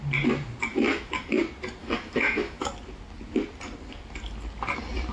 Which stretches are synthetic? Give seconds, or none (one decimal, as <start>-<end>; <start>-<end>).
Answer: 0.9-1.4; 1.8-2.7